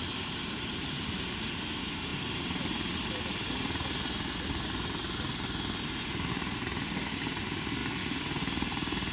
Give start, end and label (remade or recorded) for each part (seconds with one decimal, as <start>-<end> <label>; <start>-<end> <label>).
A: 0.0-2.1 remade; 2.1-6.3 recorded; 6.3-7.8 remade; 7.8-8.4 recorded; 8.4-9.1 remade